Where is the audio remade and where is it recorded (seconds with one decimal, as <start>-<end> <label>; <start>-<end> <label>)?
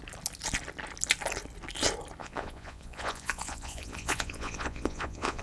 0.0-2.2 recorded; 2.2-5.4 remade